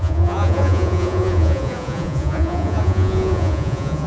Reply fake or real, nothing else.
fake